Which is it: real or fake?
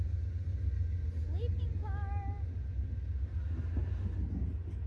real